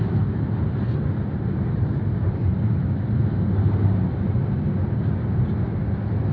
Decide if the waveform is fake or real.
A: real